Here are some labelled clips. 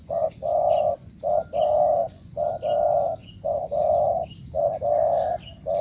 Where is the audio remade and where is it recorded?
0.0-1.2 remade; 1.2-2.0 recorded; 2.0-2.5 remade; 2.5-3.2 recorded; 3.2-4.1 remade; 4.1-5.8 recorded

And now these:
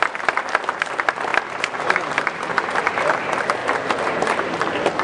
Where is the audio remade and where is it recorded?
0.0-5.0 recorded

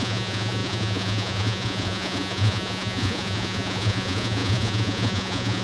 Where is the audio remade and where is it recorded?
0.0-5.6 remade

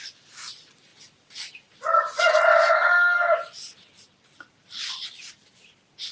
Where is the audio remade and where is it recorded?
0.0-6.1 recorded

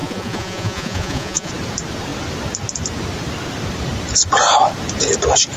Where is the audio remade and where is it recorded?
0.0-1.5 remade; 1.5-5.6 recorded

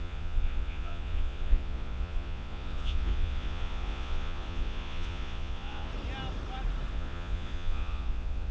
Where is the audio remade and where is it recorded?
0.0-5.9 remade; 5.9-6.9 recorded; 6.9-8.5 remade

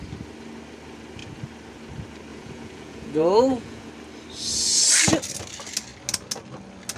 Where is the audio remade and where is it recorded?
0.0-2.3 recorded; 2.3-3.9 remade; 3.9-7.0 recorded

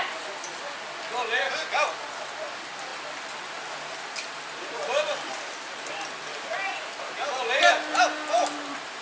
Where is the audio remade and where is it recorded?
0.0-9.0 recorded